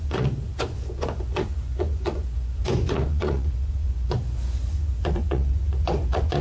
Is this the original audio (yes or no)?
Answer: no